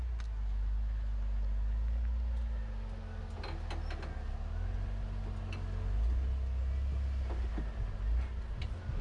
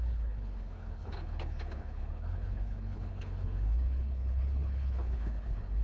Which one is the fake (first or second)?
second